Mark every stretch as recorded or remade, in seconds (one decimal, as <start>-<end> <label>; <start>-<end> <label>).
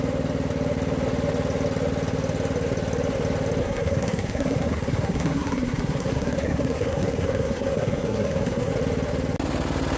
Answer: 0.0-3.6 recorded; 3.6-8.7 remade; 8.7-10.0 recorded